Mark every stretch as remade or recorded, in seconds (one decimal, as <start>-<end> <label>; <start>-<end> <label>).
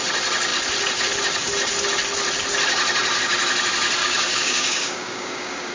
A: 0.0-4.0 recorded; 4.0-5.7 remade